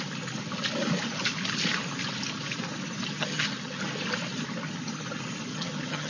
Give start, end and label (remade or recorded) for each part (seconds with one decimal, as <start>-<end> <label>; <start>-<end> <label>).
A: 0.0-3.1 recorded; 3.1-3.8 remade; 3.8-5.5 recorded; 5.5-6.1 remade